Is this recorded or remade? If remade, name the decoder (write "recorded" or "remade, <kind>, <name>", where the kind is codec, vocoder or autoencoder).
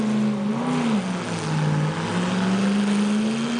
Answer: recorded